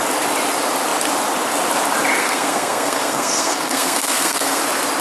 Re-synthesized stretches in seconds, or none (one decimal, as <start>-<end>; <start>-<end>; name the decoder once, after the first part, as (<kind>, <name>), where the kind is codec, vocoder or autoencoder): 2.2-4.6 (codec, SNAC)